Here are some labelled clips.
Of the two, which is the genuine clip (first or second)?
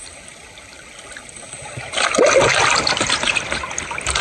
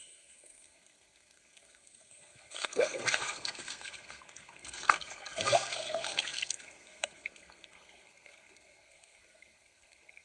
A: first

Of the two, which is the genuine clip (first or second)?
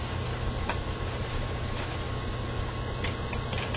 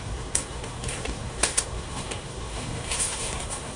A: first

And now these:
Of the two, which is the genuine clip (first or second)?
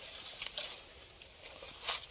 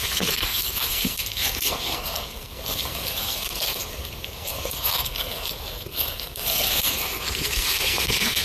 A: first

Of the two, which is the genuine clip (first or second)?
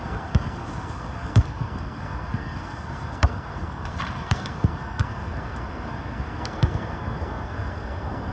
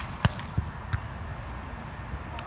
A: second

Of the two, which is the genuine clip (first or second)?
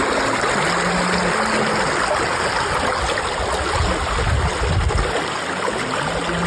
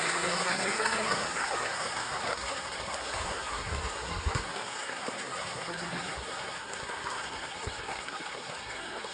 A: first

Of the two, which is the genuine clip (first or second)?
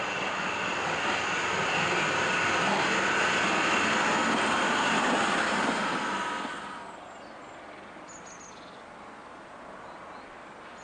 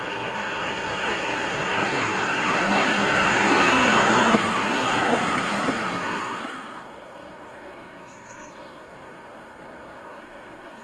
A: first